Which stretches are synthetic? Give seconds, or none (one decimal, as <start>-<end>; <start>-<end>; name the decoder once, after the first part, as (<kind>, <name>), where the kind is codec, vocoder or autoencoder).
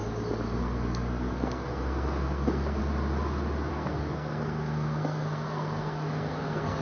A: 0.6-2.8 (codec, SNAC); 3.7-6.8